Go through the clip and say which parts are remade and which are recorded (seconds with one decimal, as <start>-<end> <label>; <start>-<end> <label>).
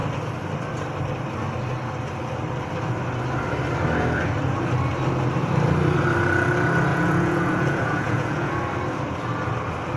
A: 0.0-6.9 recorded; 6.9-8.5 remade; 8.5-10.0 recorded